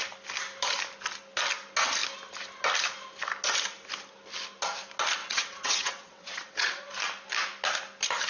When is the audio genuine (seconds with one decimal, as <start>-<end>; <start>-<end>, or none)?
0.0-5.2; 6.8-8.3